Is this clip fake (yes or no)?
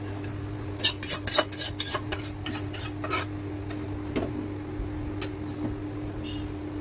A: no